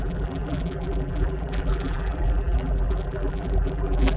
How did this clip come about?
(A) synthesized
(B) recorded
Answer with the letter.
A